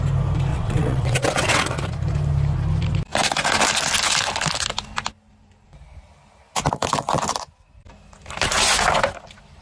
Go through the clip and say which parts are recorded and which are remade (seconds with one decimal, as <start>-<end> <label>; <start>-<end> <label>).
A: 0.0-0.5 recorded; 0.5-1.9 remade; 1.9-9.6 recorded